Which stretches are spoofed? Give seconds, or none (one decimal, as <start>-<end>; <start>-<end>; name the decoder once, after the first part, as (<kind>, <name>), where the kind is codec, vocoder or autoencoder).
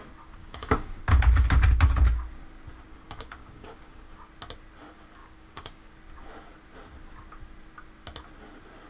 0.4-1.0 (codec, DAC); 2.9-4.3; 5.2-5.9